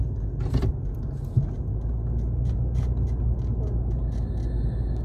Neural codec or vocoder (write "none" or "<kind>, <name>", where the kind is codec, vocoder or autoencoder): none